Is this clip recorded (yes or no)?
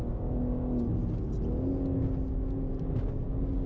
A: yes